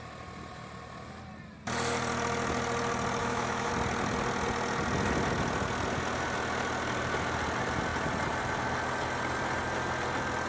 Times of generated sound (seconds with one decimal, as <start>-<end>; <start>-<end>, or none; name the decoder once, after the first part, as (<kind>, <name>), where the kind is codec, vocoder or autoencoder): 3.2-3.7 (autoencoder, DAC-VAE)